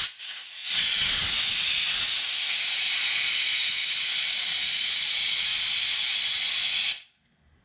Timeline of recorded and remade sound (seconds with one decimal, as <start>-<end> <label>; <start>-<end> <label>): 0.0-7.6 recorded